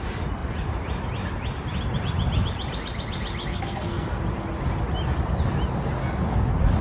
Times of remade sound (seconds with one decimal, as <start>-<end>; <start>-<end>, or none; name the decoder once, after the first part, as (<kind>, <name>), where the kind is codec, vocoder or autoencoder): 3.5-4.2 (codec, SNAC)